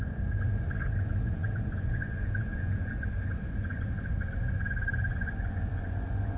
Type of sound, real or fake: fake